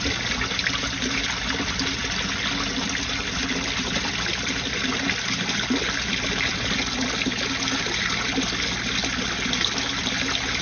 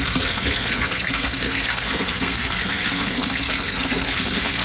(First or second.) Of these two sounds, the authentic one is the first